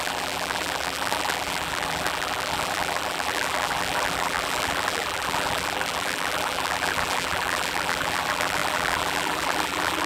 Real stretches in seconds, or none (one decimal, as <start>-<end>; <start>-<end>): none